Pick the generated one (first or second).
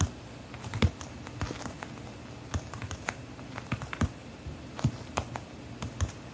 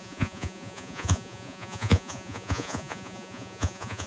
second